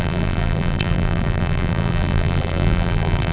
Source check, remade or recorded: remade